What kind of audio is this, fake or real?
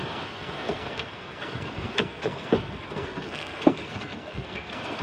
fake